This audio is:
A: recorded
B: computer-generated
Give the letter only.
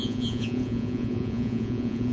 B